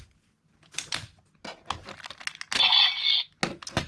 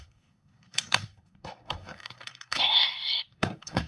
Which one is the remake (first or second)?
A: second